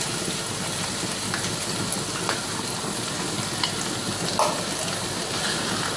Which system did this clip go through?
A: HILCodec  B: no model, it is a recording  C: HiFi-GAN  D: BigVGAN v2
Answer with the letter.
B